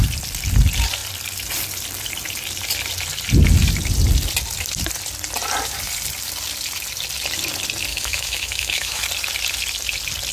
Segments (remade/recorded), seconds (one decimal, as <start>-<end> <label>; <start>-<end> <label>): 0.0-7.9 recorded; 7.9-9.0 remade; 9.0-10.3 recorded